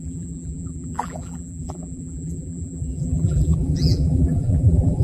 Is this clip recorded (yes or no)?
no